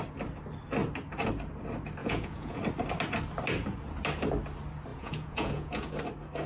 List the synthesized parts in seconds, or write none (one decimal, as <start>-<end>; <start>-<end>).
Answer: 2.0-2.6; 4.9-5.9